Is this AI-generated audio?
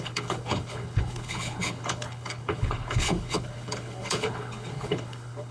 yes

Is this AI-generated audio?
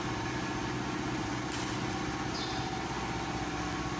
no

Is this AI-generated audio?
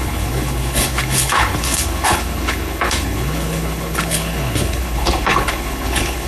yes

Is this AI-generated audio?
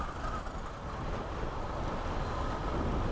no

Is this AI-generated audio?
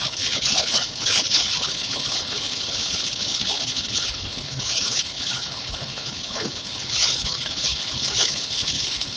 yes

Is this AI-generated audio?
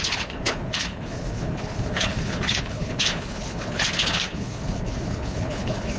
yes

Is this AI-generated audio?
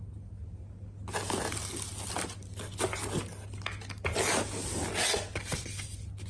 no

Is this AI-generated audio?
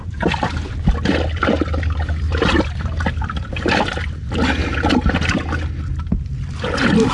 no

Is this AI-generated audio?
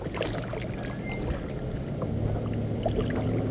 no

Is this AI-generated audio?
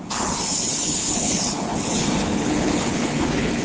yes